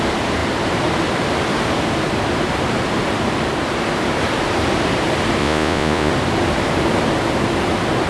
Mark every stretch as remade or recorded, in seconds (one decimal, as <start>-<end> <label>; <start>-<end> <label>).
0.0-5.4 recorded; 5.4-6.1 remade; 6.1-8.1 recorded